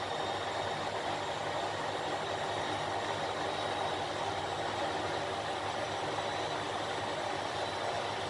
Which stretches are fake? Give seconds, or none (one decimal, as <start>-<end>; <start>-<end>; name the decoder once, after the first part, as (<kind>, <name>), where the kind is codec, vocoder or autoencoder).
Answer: none